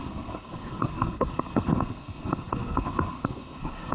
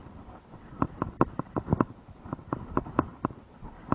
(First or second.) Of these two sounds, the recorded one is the second